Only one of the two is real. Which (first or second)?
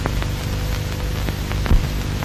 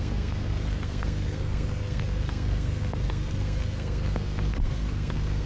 first